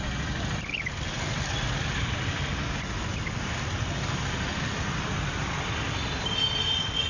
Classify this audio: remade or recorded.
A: recorded